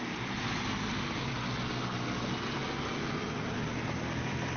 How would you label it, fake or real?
real